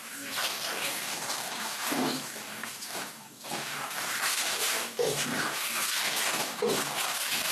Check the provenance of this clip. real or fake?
fake